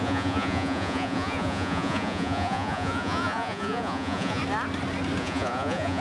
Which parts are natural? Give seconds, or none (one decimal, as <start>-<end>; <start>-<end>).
4.4-5.2

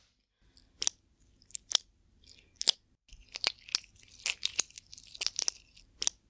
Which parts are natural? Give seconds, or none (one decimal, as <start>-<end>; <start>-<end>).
0.0-6.3

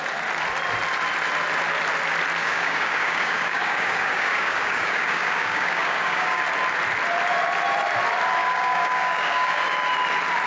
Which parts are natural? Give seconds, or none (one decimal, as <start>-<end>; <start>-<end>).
0.0-2.4; 6.4-8.4; 9.6-10.5